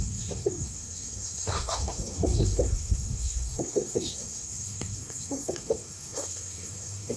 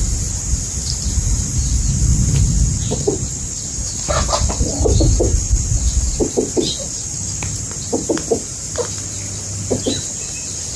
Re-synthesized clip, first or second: first